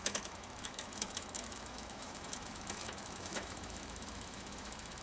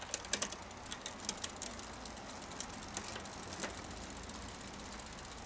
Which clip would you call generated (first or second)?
first